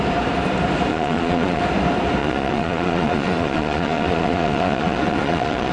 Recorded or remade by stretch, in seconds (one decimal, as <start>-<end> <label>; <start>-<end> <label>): 0.0-0.9 recorded; 0.9-1.6 remade; 1.6-2.2 recorded; 2.2-5.7 remade